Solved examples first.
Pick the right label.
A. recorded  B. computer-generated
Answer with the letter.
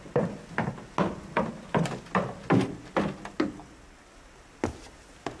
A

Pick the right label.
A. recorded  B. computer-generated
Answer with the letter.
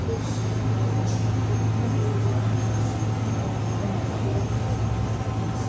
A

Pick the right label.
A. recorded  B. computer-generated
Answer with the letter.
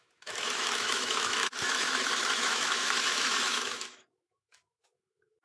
B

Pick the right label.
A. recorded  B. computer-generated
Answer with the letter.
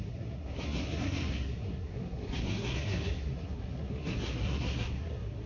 B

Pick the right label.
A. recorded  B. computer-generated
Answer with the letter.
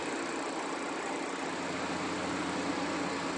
A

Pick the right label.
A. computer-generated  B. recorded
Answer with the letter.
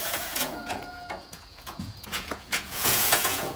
A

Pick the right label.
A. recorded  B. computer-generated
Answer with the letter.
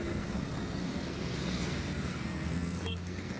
B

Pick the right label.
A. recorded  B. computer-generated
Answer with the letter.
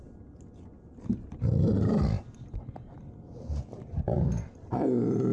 A